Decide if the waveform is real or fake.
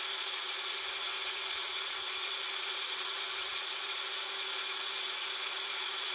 fake